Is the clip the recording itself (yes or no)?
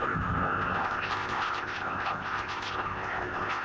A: no